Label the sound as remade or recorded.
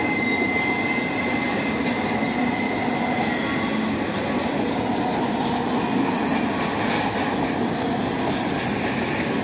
recorded